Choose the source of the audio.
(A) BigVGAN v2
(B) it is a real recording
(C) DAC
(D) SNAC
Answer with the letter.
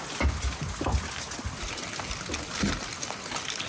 B